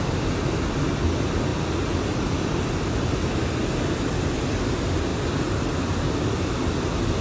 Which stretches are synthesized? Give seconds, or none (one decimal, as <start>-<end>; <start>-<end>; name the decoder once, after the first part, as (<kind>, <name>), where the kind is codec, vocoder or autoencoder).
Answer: none